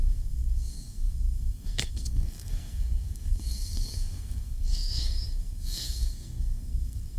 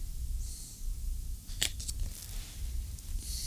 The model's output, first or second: first